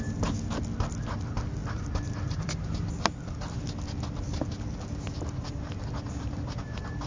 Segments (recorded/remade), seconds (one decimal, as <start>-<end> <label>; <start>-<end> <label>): 0.0-1.6 recorded; 1.6-2.5 remade; 2.5-7.1 recorded